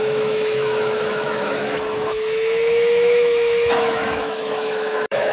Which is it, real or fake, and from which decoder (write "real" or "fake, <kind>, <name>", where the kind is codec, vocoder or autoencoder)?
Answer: fake, autoencoder, DAC-VAE